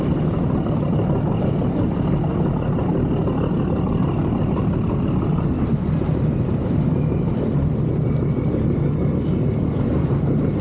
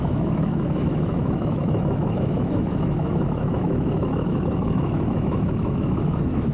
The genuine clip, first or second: first